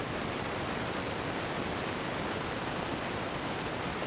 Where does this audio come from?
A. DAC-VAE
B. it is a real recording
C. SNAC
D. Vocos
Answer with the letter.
B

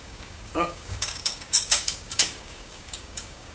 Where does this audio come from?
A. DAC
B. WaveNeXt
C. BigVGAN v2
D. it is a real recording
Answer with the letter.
A